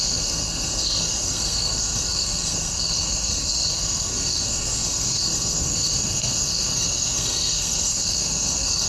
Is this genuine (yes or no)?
no